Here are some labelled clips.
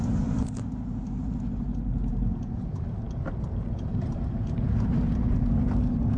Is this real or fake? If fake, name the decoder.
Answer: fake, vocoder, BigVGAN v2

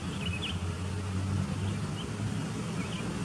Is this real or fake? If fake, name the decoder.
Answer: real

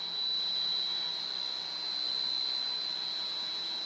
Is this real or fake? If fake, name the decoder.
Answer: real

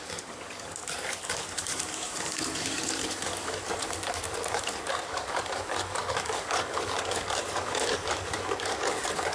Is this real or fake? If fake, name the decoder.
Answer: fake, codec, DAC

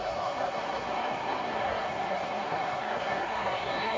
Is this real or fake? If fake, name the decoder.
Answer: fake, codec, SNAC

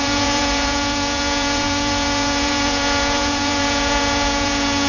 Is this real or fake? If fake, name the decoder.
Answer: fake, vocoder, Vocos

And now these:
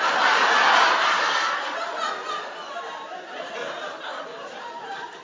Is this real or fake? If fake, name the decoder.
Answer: real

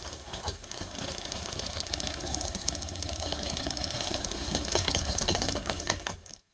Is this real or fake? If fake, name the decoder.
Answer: fake, codec, SNAC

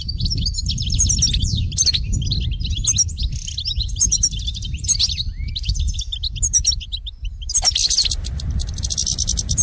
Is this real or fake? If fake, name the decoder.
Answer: fake, vocoder, BigVGAN v2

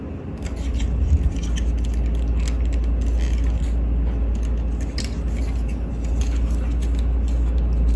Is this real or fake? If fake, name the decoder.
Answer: real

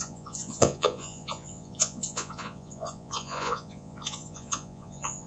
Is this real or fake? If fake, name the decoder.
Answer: fake, vocoder, Vocos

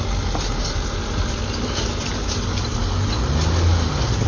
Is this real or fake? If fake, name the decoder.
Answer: real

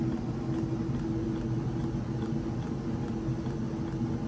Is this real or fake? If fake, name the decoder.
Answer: real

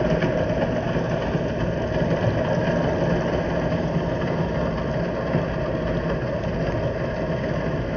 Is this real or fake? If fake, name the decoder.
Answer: real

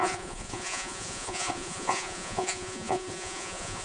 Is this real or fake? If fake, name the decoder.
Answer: fake, vocoder, Vocos